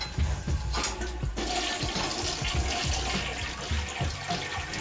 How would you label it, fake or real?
real